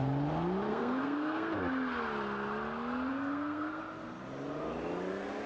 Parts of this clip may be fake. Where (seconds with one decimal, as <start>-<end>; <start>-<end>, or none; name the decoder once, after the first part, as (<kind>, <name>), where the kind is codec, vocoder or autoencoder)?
0.7-1.6 (codec, SNAC); 3.1-3.8